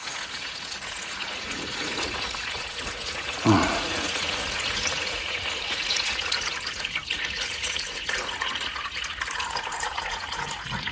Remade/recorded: remade